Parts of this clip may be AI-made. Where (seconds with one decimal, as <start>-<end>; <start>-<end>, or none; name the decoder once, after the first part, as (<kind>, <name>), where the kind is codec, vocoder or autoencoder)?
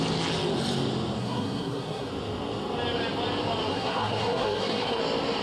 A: 1.2-2.1 (codec, SNAC); 3.7-5.0